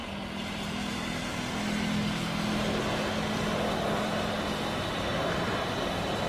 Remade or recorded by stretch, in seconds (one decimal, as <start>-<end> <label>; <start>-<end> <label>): 0.0-6.3 recorded